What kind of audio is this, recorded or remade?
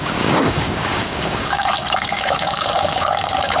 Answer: remade